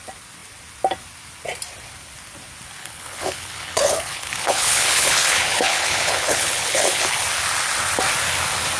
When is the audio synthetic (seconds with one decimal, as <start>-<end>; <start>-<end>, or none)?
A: 2.8-7.1